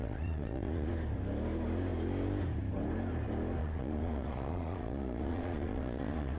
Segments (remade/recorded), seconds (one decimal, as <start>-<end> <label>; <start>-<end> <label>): 0.0-0.9 remade; 0.9-3.6 recorded; 3.6-6.4 remade